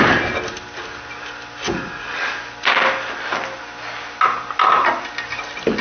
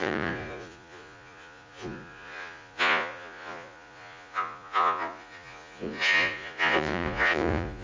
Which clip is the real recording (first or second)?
first